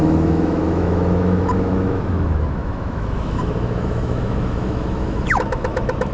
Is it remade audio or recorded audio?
remade